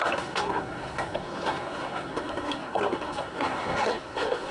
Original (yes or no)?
no